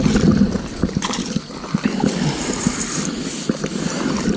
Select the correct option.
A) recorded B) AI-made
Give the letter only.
A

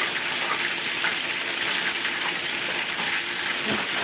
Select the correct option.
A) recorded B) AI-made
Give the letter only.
A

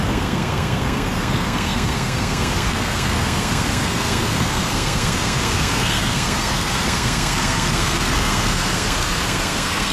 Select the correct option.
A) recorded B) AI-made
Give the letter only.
B